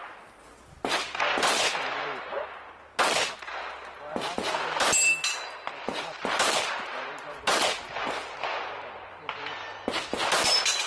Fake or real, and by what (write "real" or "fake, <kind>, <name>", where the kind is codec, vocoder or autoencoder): real